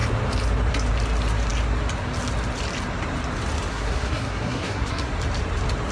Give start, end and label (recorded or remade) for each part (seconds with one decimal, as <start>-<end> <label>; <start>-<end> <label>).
0.0-3.7 recorded; 3.7-5.1 remade; 5.1-5.9 recorded